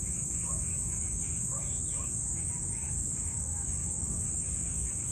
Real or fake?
fake